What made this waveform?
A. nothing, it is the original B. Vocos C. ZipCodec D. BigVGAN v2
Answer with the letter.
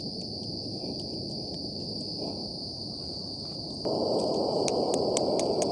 A